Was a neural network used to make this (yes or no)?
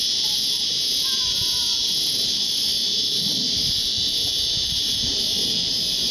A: no